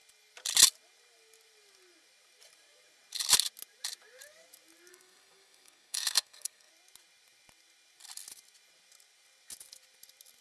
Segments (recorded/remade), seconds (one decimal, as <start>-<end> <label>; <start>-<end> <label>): 0.0-4.9 recorded; 4.9-6.7 remade; 6.7-10.4 recorded